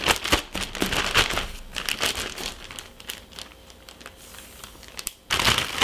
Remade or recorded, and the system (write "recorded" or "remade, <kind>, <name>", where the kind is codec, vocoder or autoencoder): recorded